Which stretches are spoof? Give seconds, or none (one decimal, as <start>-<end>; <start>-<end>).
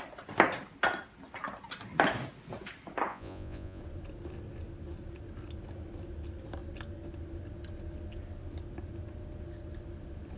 3.1-3.8